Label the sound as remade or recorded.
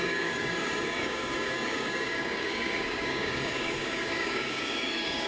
remade